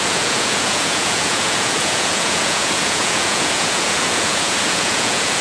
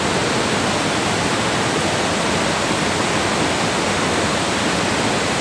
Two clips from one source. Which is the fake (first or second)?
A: first